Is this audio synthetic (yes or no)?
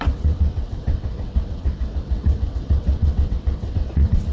yes